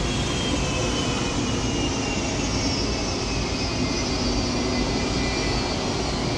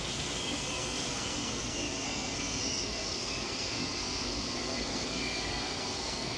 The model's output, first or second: second